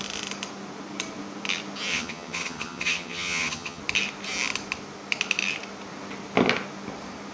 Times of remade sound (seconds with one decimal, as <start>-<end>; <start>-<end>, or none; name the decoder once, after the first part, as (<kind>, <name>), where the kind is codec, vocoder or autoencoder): 1.9-3.8 (vocoder, HiFi-GAN)